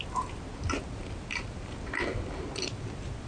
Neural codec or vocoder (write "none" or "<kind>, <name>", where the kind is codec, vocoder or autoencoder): none